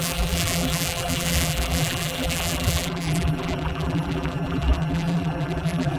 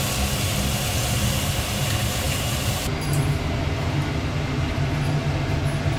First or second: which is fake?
first